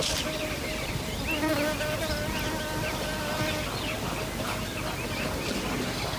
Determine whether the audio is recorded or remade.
recorded